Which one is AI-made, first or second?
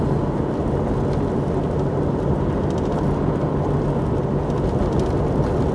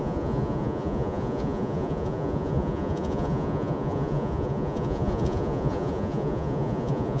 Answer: second